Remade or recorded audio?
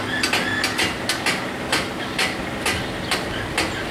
recorded